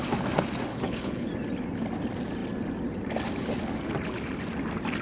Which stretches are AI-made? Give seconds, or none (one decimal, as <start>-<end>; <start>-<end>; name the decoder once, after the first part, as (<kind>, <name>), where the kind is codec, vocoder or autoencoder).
0.7-1.3 (codec, HILCodec)